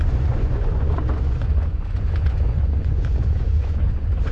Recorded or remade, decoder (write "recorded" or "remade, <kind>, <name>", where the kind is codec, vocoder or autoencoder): remade, vocoder, Vocos